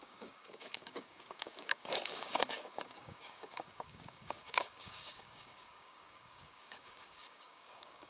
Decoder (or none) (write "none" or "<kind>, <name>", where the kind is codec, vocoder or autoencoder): codec, DAC